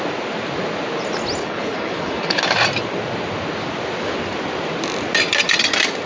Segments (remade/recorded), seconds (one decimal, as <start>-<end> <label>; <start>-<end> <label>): 0.0-1.4 recorded; 1.4-2.4 remade; 2.4-6.1 recorded